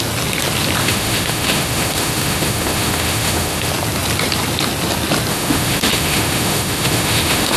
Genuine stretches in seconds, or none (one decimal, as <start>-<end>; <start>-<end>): 0.0-0.8; 3.7-5.3